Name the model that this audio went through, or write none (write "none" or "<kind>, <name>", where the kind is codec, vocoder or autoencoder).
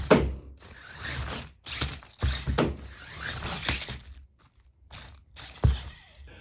none